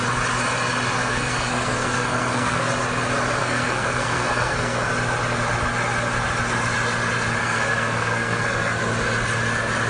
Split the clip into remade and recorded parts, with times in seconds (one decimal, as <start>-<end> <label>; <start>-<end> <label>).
0.0-1.0 recorded; 1.0-2.7 remade; 2.7-3.4 recorded; 3.4-4.9 remade; 4.9-7.4 recorded; 7.4-8.8 remade; 8.8-9.9 recorded